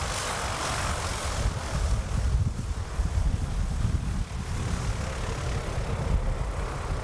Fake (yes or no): no